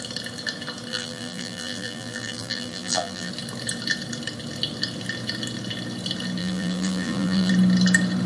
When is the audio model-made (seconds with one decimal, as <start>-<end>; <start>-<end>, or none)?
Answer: 0.9-3.3; 6.4-7.5